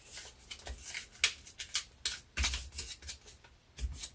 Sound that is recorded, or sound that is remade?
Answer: recorded